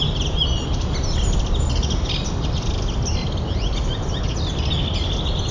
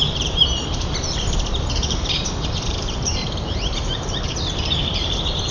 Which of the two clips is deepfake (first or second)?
second